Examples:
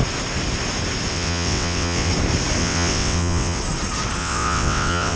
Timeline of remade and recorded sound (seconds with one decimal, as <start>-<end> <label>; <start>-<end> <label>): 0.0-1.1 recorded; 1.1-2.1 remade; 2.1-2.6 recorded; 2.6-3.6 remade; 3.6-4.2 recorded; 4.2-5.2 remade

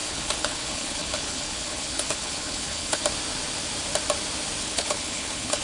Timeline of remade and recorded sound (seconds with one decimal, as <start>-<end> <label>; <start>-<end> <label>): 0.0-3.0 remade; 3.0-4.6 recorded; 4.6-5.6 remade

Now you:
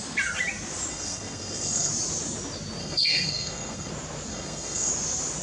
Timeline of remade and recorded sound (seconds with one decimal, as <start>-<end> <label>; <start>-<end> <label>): 0.0-0.9 recorded; 0.9-1.9 remade; 1.9-2.8 recorded; 2.8-3.9 remade; 3.9-4.3 recorded; 4.3-4.9 remade; 4.9-5.4 recorded

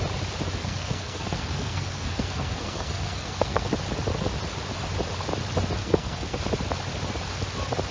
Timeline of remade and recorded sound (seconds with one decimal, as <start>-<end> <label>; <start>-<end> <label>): 0.0-0.6 recorded; 0.6-3.7 remade; 3.7-5.8 recorded; 5.8-6.4 remade; 6.4-7.9 recorded

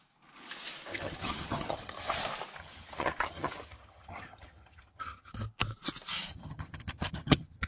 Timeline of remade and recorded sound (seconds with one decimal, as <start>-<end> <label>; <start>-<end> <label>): 0.0-0.9 recorded; 0.9-2.2 remade; 2.2-2.6 recorded; 2.6-5.3 remade; 5.3-6.3 recorded; 6.3-7.7 remade

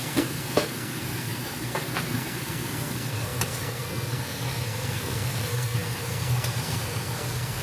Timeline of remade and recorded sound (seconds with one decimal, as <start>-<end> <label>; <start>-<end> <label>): 0.0-7.6 remade